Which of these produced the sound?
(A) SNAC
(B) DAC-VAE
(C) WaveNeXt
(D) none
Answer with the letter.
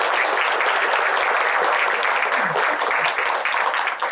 D